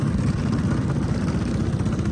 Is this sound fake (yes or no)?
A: no